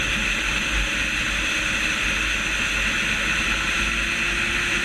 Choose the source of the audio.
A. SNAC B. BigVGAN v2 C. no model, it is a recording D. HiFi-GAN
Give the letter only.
C